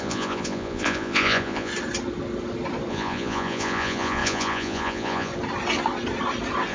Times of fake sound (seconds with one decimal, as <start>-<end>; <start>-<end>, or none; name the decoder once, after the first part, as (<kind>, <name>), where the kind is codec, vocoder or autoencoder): 0.0-1.7 (vocoder, Vocos); 2.9-5.3